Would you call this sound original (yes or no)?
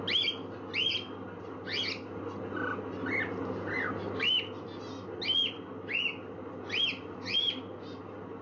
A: yes